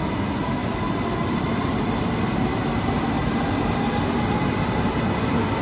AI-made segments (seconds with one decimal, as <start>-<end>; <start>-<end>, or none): none